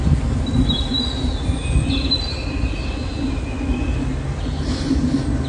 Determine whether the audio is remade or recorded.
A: recorded